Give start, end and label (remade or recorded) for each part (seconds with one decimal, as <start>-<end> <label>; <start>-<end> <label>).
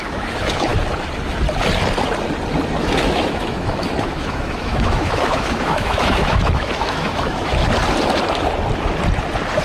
0.0-0.7 remade; 0.7-2.8 recorded; 2.8-7.6 remade; 7.6-9.6 recorded